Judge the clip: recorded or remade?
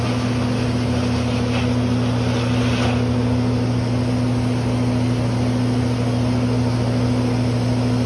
recorded